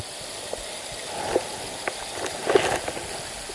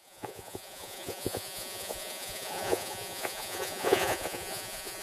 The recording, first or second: first